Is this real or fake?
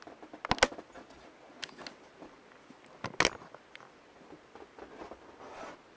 real